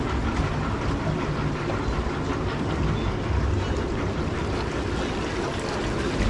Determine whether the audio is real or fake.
real